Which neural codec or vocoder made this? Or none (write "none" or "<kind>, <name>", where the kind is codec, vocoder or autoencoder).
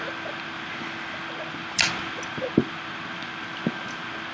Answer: none